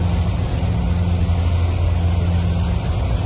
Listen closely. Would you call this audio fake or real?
real